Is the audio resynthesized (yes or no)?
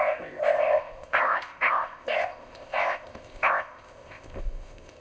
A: yes